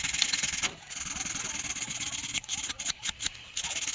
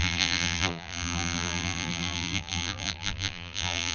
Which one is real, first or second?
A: first